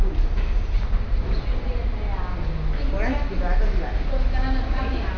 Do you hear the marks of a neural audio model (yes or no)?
no